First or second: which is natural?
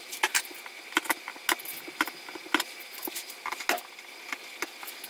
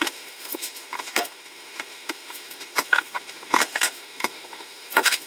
first